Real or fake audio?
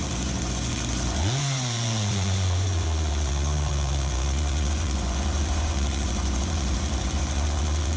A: fake